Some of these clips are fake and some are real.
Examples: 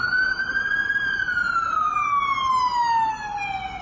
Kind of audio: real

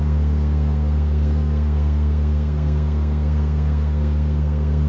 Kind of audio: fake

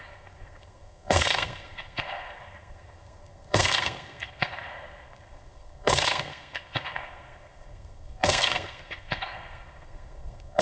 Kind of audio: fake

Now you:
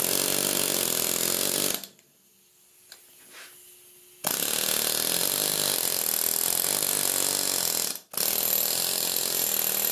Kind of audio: real